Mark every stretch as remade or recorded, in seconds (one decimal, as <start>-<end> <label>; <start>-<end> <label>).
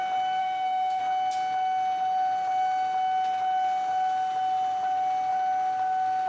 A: 0.0-0.4 recorded; 0.4-1.0 remade; 1.0-6.3 recorded